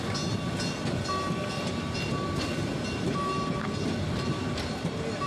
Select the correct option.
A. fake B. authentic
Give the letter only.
B